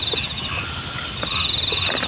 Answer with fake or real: real